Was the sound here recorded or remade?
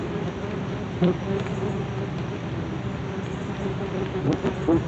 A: recorded